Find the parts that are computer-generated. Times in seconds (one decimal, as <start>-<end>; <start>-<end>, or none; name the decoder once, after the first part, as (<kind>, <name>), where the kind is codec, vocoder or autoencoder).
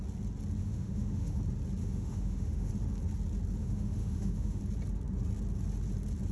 0.6-1.4 (autoencoder, DAC-VAE); 1.8-2.7; 3.6-4.6